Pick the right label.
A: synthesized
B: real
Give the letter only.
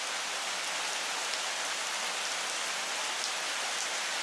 B